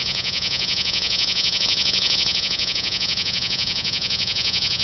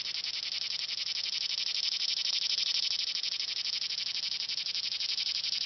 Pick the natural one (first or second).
second